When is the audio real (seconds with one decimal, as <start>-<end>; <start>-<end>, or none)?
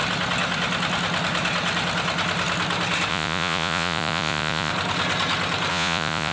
0.0-3.1; 4.7-5.7